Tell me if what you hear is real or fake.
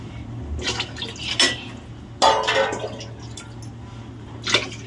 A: real